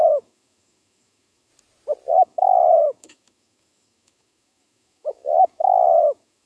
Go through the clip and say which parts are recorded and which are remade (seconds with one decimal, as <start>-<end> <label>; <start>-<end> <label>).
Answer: 0.0-1.5 remade; 1.5-2.1 recorded; 2.1-6.5 remade